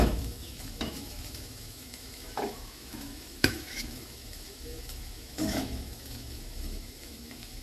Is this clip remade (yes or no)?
yes